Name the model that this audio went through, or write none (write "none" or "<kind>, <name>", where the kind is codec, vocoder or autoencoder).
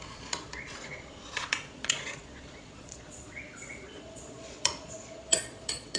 vocoder, Vocos